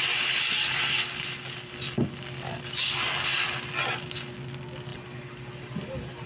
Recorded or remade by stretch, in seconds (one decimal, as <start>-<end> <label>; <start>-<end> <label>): 0.0-6.3 recorded